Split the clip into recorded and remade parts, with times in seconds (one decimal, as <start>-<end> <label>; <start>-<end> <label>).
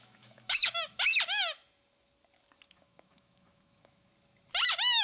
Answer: 0.0-1.1 remade; 1.1-2.7 recorded; 2.7-4.1 remade; 4.1-4.6 recorded; 4.6-5.0 remade